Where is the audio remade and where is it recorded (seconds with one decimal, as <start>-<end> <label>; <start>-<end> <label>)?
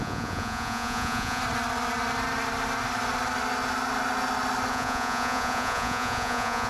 0.0-1.4 remade; 1.4-4.7 recorded; 4.7-6.7 remade